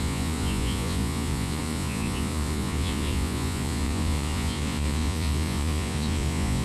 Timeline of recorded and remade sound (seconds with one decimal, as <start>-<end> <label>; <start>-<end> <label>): 0.0-6.6 remade

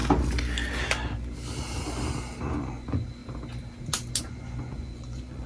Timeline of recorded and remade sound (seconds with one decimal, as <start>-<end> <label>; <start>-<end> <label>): 0.0-2.6 recorded; 2.6-3.2 remade; 3.2-4.2 recorded; 4.2-5.5 remade